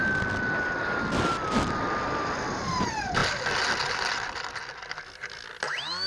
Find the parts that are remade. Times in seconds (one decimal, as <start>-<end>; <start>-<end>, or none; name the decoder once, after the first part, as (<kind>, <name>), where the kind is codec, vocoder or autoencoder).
2.5-3.2 (vocoder, BigVGAN v2)